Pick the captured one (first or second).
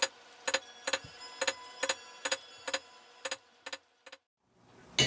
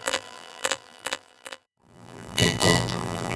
first